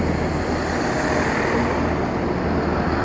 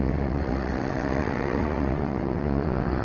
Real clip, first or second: first